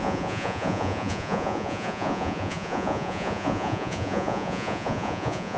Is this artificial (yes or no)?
yes